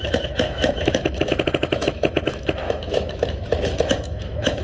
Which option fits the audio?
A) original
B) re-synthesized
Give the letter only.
B